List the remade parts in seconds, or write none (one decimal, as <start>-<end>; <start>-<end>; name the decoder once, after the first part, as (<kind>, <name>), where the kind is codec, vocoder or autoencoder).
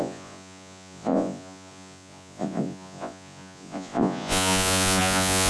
0.0-5.5 (vocoder, Vocos)